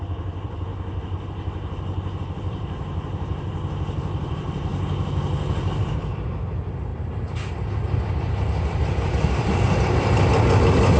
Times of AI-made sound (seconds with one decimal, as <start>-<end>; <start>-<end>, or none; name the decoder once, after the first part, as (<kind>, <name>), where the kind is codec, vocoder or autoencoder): 0.0-0.7 (vocoder, BigVGAN v2); 2.2-4.7; 5.7-6.9; 7.5-11.0

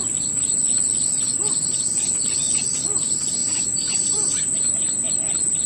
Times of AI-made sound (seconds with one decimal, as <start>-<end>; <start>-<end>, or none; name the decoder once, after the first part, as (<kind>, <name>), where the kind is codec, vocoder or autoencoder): 3.4-5.1 (vocoder, BigVGAN v2)